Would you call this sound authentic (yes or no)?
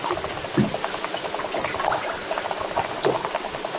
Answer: yes